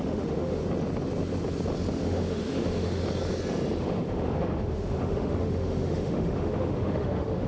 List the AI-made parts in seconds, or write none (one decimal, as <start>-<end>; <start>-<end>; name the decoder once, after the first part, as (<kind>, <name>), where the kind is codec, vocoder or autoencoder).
0.0-0.6 (autoencoder, DAC-VAE); 1.9-3.0; 3.8-7.5